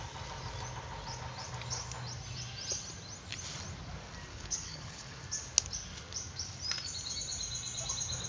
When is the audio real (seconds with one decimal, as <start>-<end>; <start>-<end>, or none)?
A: 0.0-4.3; 5.2-8.3